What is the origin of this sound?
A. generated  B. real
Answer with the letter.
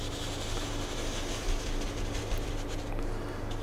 B